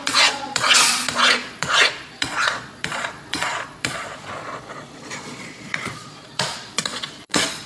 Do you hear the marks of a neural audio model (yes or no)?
yes